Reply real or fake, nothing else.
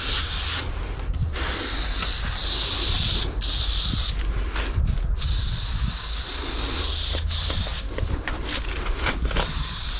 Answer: real